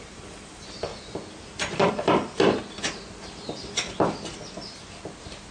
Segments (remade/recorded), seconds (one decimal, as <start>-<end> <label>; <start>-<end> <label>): 0.0-0.9 remade; 0.9-2.8 recorded; 2.8-3.6 remade; 3.6-5.5 recorded